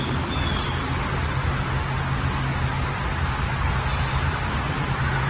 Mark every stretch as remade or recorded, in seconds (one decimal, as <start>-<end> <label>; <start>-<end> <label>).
0.0-2.5 recorded; 2.5-3.1 remade; 3.1-4.1 recorded; 4.1-5.3 remade